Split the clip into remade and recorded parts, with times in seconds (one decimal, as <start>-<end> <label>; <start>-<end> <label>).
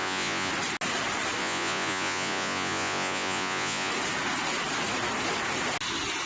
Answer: 0.0-0.5 remade; 0.5-1.4 recorded; 1.4-3.9 remade; 3.9-6.3 recorded